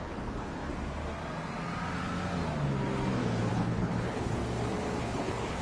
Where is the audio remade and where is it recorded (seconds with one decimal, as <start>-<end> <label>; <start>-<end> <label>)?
0.0-0.7 remade; 0.7-3.5 recorded; 3.5-4.4 remade; 4.4-5.0 recorded; 5.0-5.6 remade